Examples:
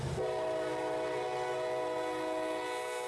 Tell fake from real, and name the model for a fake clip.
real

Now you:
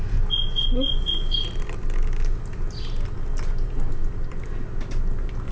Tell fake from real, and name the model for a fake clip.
real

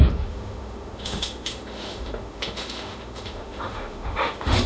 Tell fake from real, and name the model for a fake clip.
fake, autoencoder, DAC-VAE